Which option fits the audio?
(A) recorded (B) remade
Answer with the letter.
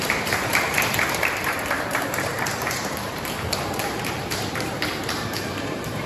B